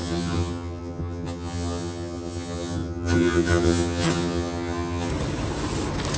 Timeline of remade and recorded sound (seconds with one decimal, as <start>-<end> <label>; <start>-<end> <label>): 0.0-5.1 remade; 5.1-6.2 recorded